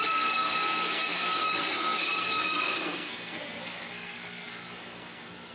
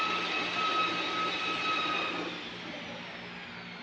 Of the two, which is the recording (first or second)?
second